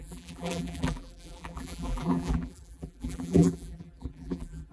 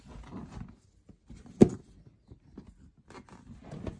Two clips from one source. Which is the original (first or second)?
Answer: second